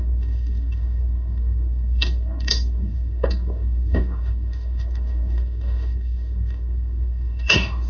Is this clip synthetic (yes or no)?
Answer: yes